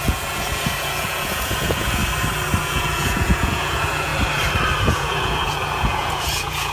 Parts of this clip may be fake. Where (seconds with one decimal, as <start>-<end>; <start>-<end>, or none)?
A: 0.0-2.0; 2.6-4.1; 4.8-6.7